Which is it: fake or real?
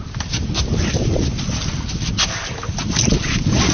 real